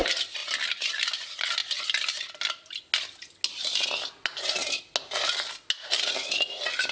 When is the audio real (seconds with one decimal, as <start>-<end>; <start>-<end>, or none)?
0.0-6.9